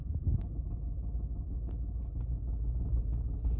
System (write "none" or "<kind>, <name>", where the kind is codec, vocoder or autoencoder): none